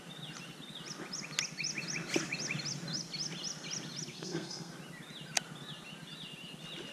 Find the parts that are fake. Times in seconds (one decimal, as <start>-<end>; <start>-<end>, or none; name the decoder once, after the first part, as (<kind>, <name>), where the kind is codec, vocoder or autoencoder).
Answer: 4.1-4.7 (codec, SNAC)